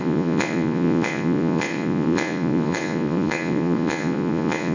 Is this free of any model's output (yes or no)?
no